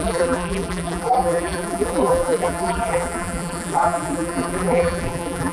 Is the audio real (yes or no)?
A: no